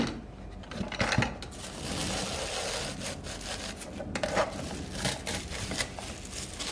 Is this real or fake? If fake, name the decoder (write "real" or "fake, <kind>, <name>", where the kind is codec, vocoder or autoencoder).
real